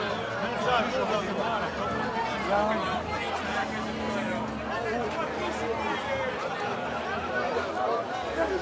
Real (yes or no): yes